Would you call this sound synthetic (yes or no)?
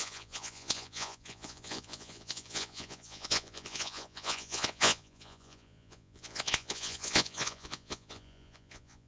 yes